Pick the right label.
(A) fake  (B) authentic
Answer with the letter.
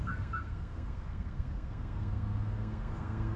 A